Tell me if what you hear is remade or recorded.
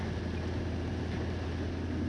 recorded